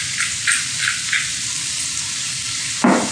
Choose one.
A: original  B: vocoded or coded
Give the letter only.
A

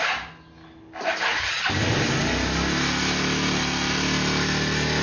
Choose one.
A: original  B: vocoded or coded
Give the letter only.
A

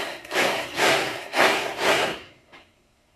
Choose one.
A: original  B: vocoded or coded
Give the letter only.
B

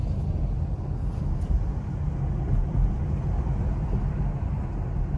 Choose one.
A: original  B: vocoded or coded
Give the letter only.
A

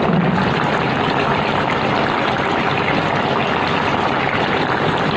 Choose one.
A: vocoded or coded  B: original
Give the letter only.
A